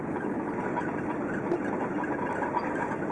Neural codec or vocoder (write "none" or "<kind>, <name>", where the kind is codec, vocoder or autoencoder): none